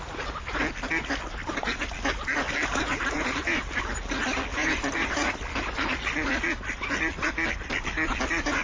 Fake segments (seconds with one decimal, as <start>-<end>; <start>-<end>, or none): 2.9-3.8; 4.5-5.3